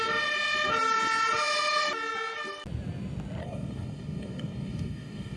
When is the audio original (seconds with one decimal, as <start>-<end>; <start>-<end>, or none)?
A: 0.0-3.4